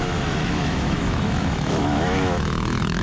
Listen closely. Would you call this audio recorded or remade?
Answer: remade